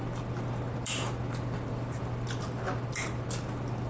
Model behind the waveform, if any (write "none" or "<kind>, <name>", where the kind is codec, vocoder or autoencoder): none